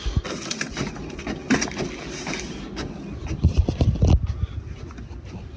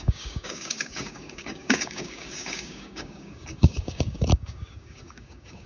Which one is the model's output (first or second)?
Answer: second